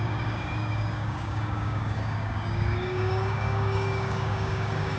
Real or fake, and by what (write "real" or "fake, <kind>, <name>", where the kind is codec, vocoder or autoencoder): fake, codec, DAC